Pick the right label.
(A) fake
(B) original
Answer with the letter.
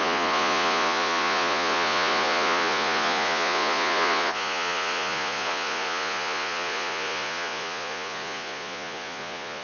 A